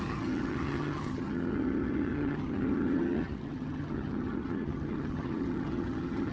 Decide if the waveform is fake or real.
fake